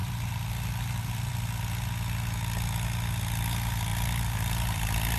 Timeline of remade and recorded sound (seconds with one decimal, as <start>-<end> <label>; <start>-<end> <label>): 0.0-1.3 remade; 1.3-3.9 recorded; 3.9-5.2 remade